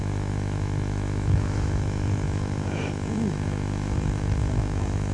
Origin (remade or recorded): remade